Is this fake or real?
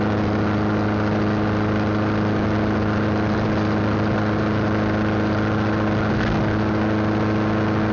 real